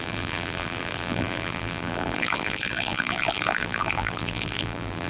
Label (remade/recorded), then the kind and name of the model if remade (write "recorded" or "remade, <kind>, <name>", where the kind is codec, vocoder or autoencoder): remade, vocoder, BigVGAN v2